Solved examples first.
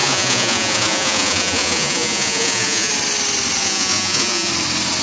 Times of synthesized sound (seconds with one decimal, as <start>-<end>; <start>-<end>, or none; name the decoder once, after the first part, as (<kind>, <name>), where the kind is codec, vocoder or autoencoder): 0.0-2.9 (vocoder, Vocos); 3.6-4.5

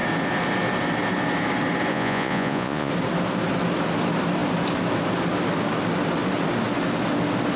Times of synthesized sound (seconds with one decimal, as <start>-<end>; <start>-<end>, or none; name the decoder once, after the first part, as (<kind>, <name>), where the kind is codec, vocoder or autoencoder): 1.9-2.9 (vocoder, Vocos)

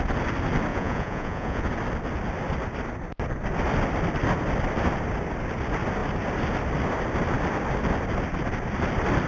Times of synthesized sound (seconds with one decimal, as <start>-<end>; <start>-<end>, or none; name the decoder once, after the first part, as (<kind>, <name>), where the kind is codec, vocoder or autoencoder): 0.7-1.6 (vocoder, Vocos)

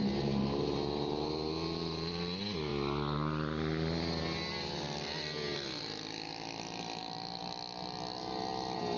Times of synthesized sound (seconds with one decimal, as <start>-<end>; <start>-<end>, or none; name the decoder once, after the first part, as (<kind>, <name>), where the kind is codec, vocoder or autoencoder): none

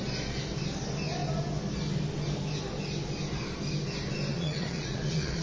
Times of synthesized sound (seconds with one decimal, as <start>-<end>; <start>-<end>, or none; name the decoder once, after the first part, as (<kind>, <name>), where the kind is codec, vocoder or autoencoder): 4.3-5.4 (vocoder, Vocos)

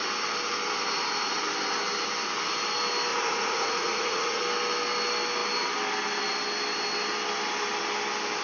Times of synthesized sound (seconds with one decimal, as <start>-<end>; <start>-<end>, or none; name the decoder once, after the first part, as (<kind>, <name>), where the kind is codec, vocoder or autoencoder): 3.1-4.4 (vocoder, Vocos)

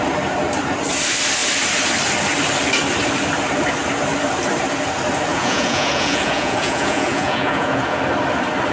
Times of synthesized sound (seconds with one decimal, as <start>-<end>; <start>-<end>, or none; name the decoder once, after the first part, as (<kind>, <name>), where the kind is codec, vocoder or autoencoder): 5.3-8.0 (vocoder, Vocos)

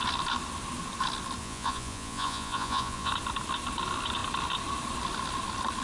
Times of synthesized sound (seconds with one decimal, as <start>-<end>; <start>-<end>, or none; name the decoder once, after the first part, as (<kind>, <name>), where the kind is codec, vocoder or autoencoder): 1.4-3.1 (vocoder, Vocos)